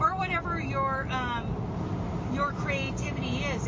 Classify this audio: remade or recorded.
recorded